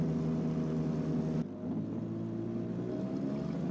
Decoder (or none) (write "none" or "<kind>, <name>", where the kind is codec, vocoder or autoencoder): none